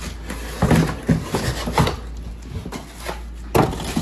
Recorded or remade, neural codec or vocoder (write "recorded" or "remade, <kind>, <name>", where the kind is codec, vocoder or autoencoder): recorded